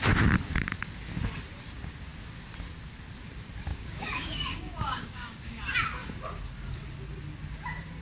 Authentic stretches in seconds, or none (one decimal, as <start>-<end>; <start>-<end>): 0.0-3.7; 5.6-8.0